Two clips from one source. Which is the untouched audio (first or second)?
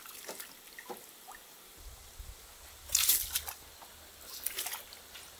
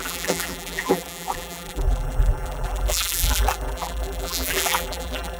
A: first